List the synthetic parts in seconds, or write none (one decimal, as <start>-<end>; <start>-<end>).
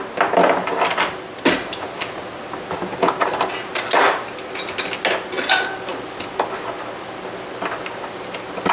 none